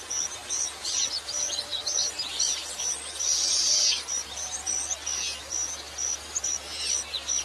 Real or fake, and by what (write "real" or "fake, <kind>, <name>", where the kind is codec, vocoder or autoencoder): real